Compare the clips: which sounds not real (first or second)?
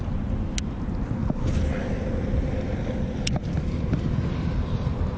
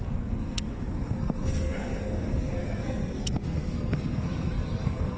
second